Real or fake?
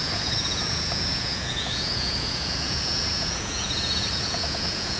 fake